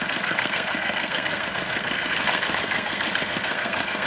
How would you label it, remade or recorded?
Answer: remade